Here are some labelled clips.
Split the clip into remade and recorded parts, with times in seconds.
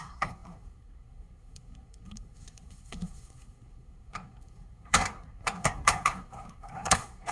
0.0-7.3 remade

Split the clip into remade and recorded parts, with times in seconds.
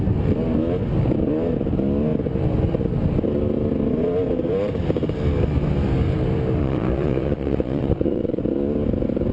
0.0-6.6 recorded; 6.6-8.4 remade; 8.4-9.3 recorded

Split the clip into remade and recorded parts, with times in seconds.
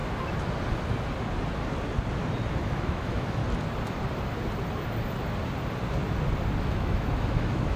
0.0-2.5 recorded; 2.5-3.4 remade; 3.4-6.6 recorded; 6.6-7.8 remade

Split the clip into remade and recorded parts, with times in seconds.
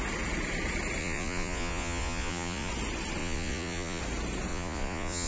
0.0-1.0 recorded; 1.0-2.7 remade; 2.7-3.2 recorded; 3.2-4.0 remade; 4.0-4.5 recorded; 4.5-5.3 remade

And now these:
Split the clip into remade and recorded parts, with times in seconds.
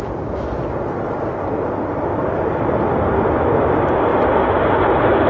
0.0-5.3 recorded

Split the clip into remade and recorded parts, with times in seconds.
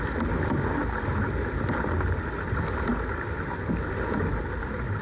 0.0-5.0 recorded